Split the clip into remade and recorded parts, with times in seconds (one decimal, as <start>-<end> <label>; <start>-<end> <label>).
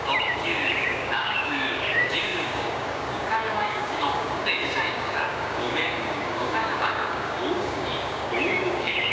0.0-9.1 remade